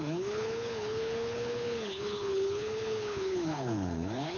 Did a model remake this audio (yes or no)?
yes